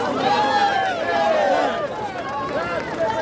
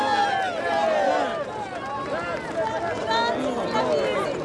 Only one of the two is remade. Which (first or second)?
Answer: first